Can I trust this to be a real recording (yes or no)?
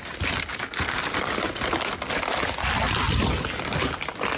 yes